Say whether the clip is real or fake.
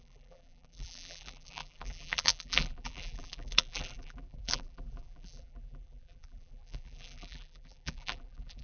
fake